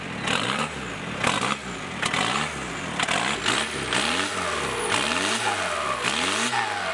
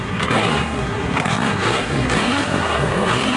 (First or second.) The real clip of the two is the first